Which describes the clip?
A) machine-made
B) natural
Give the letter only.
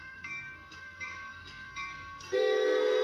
A